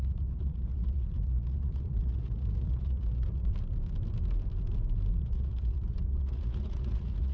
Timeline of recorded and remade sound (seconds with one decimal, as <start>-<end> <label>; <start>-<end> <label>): 0.0-3.5 remade; 3.5-5.2 recorded; 5.2-7.3 remade